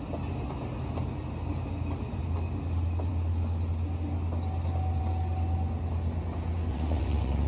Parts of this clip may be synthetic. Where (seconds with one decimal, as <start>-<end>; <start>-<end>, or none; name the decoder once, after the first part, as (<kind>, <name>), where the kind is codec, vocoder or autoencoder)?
6.7-7.5 (vocoder, Vocos)